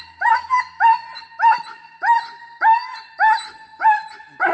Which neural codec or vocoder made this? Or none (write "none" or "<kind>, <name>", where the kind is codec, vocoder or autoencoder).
none